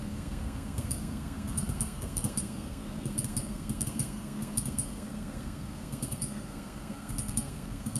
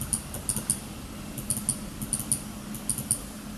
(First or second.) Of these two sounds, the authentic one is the second